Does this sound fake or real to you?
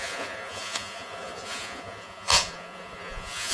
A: fake